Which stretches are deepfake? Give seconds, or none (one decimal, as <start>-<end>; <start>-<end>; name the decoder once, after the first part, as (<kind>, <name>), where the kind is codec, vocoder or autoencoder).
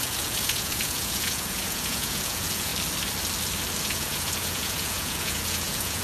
0.0-2.7 (vocoder, Vocos); 3.8-6.0